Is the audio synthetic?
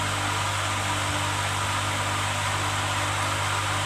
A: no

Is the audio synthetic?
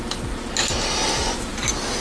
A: no